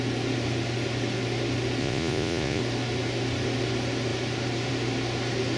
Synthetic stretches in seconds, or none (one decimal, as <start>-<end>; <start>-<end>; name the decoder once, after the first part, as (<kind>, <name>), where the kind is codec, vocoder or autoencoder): 1.8-2.6 (vocoder, Vocos)